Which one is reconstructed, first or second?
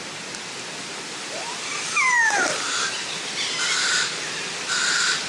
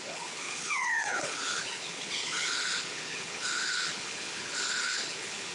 second